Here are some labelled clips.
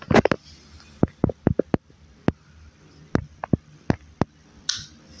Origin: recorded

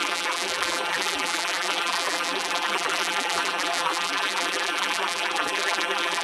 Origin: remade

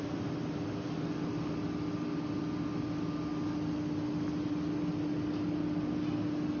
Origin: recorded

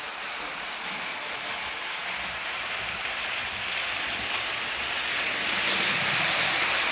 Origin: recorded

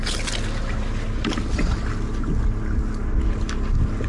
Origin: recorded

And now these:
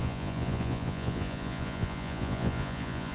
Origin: remade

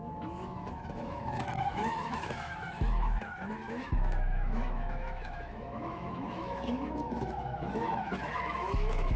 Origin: remade